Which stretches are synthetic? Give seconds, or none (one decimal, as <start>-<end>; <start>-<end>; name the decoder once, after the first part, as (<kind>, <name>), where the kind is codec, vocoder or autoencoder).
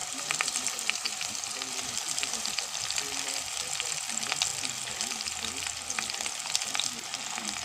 0.0-3.7 (vocoder, BigVGAN v2)